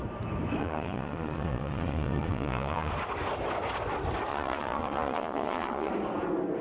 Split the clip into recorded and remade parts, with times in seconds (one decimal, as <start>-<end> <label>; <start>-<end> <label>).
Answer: 0.0-0.6 recorded; 0.6-2.9 remade; 2.9-4.3 recorded; 4.3-5.9 remade; 5.9-6.6 recorded